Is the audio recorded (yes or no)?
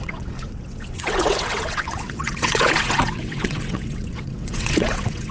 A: no